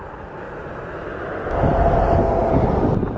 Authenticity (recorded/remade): recorded